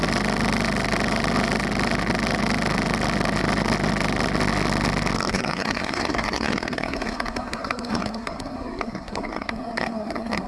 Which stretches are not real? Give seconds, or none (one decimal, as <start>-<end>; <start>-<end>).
5.3-10.5